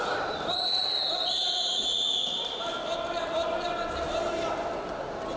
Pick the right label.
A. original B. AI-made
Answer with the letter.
A